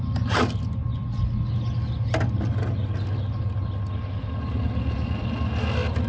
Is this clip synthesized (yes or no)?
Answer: no